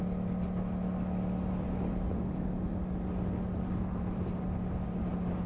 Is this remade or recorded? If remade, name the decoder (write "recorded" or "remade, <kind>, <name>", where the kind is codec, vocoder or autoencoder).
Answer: recorded